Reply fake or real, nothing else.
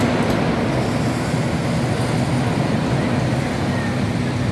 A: real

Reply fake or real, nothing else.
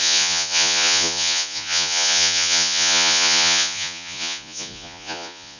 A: fake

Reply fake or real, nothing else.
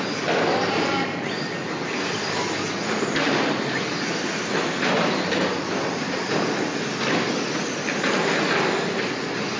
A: real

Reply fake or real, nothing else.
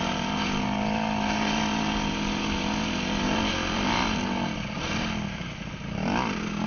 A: real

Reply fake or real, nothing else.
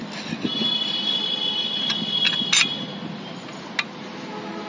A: real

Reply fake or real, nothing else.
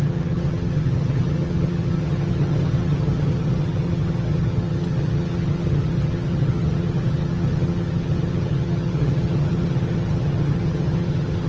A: fake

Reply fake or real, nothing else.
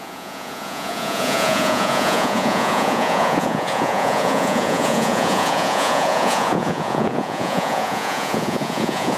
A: fake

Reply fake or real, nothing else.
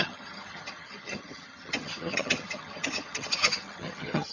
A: fake